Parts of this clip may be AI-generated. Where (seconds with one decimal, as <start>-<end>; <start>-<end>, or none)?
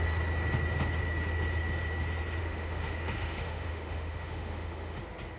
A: 2.4-5.0